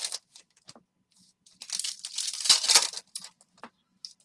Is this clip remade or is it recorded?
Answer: recorded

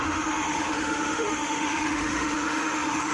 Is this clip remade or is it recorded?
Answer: remade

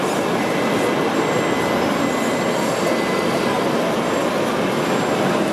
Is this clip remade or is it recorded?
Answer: recorded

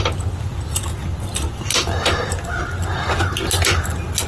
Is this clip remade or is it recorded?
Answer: recorded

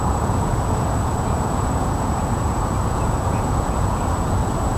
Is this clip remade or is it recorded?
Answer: remade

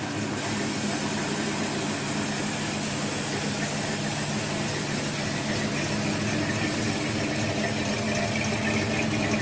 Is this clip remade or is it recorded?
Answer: recorded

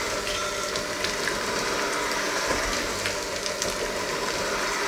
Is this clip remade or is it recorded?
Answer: recorded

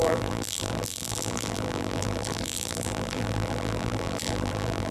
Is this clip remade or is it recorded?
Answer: remade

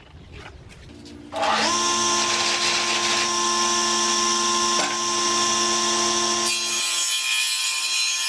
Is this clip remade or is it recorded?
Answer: recorded